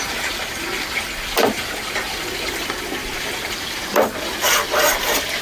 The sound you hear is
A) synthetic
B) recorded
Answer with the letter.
B